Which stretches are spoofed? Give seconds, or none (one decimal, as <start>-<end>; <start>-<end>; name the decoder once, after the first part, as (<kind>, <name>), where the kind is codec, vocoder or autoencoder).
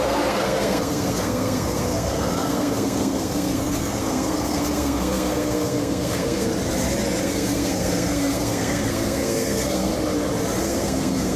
0.0-6.5 (codec, SNAC); 7.2-9.9; 10.6-11.4